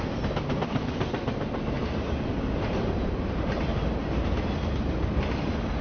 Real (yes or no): yes